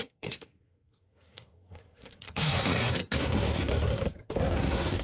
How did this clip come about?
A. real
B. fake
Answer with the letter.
B